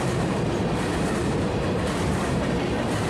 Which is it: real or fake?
fake